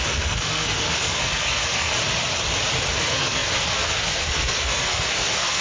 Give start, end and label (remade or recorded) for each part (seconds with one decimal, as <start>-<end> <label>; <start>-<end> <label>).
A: 0.0-1.9 remade; 1.9-3.0 recorded; 3.0-5.6 remade